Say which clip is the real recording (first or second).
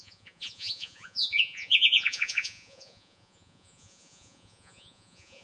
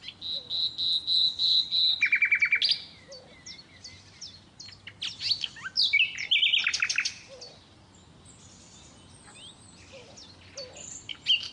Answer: second